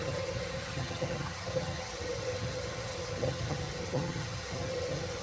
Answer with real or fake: fake